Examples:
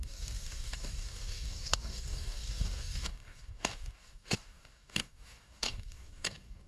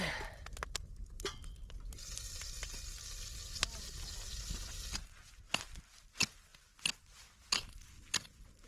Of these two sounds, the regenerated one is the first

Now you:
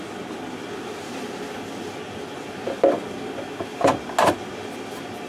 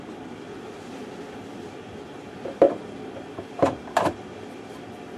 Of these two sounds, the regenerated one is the second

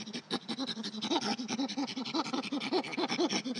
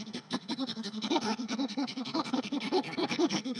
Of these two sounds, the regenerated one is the second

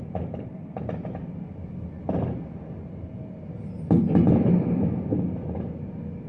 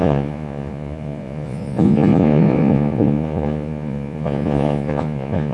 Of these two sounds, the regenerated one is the second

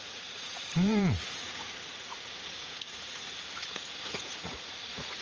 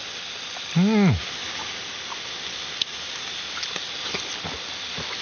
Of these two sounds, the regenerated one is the first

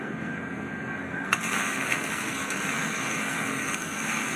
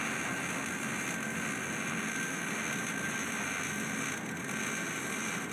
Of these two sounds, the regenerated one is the first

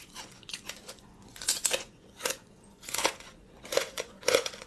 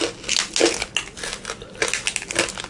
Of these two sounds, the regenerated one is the first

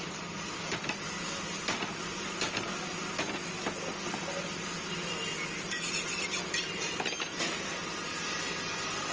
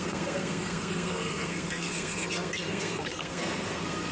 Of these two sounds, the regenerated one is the second